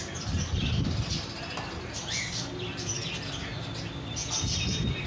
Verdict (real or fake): real